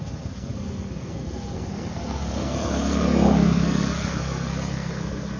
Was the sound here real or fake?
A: fake